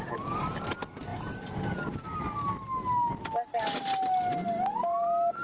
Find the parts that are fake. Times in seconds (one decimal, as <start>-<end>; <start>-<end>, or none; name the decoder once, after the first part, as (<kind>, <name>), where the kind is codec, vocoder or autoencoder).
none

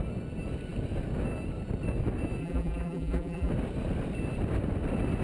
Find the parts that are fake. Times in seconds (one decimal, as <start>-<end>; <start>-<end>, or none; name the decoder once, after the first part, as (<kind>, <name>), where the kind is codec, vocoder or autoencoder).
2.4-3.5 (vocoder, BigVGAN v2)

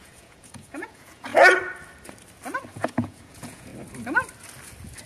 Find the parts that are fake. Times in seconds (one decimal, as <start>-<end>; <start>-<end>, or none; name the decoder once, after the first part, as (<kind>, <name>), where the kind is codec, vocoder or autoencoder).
0.0-1.3 (vocoder, Vocos); 2.7-3.7

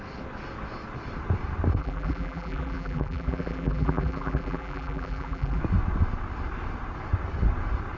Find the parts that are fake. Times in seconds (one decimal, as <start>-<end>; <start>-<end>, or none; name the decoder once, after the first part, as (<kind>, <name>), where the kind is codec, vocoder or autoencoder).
1.8-5.6 (vocoder, BigVGAN v2)